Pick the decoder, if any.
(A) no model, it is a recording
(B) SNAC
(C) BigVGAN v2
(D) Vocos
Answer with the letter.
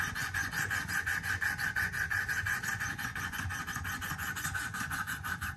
D